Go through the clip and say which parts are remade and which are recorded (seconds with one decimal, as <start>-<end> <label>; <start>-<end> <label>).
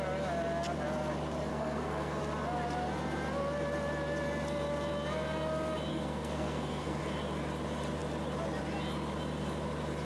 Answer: 0.0-1.5 recorded; 1.5-2.2 remade; 2.2-5.9 recorded; 5.9-7.0 remade; 7.0-10.0 recorded